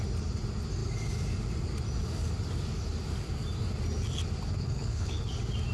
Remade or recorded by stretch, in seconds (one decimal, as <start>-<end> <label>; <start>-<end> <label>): 0.0-4.6 recorded; 4.6-5.3 remade; 5.3-5.7 recorded